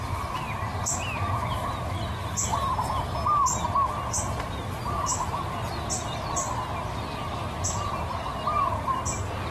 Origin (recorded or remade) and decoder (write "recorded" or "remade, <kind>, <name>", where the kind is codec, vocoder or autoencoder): recorded